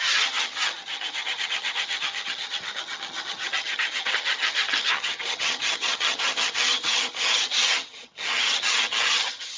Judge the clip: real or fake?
fake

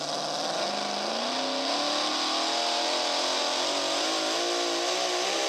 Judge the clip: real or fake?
real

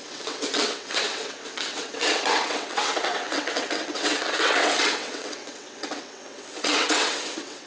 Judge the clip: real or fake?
fake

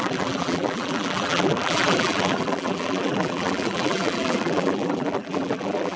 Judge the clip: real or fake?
fake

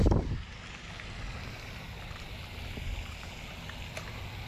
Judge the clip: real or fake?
real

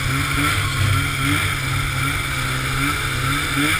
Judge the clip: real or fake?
real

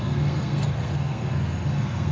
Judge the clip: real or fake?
fake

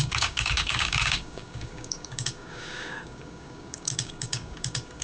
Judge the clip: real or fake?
fake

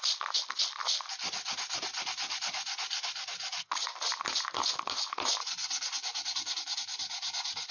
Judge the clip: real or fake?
real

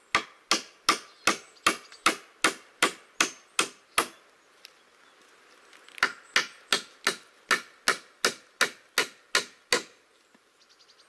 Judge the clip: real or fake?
real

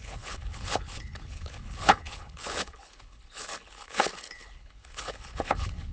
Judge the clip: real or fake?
fake